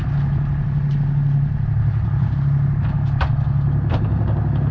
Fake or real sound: real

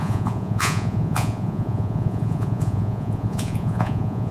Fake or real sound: fake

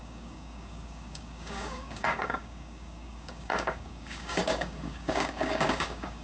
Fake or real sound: fake